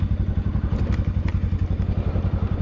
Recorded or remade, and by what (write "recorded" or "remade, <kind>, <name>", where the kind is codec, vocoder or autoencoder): recorded